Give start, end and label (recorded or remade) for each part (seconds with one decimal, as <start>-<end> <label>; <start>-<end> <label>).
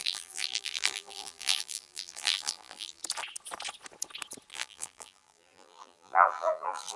0.0-3.0 remade; 3.0-4.5 recorded; 4.5-7.0 remade